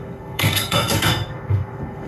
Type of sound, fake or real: fake